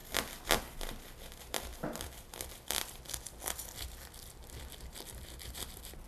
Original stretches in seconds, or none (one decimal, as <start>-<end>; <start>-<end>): 0.0-6.1